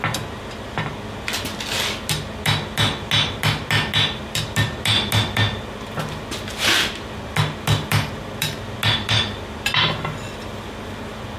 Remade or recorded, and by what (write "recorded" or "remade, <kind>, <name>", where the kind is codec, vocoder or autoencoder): recorded